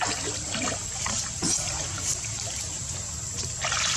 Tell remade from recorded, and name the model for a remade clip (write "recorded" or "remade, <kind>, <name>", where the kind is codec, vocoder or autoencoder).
recorded